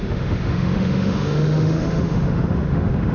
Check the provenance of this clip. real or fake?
fake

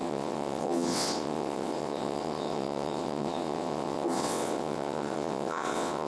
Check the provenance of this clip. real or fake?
fake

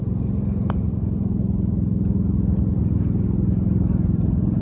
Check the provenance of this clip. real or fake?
real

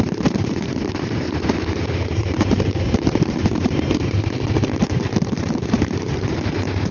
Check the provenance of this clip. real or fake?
fake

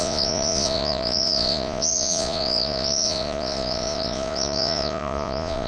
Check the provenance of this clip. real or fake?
fake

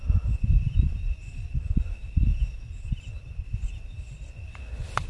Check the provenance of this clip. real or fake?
real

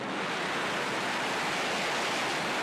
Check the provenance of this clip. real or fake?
real